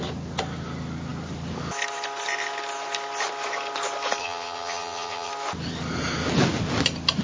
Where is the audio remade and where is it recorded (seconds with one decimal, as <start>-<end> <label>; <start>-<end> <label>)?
0.0-4.2 recorded; 4.2-5.3 remade; 5.3-7.2 recorded